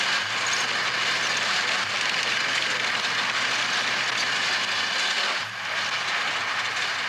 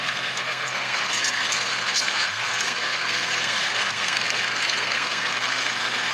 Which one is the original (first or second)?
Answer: first